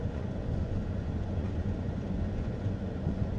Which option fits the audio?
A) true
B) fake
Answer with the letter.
B